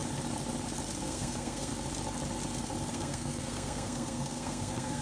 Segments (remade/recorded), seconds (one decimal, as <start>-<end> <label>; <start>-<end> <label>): 0.0-1.0 recorded; 1.0-1.7 remade; 1.7-2.9 recorded; 2.9-5.0 remade